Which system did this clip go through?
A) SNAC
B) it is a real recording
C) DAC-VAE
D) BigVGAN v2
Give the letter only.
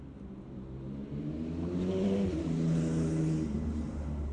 B